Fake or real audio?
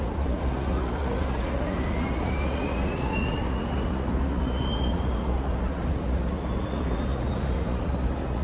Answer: fake